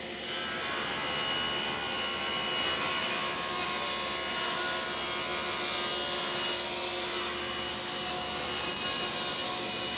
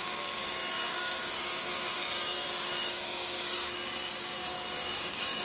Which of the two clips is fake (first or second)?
second